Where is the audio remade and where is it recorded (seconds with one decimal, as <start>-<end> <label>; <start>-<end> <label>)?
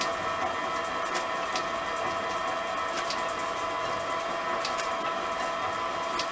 0.0-6.3 recorded